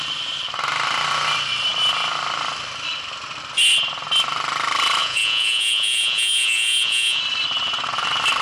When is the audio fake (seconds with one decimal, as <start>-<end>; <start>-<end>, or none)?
5.0-7.2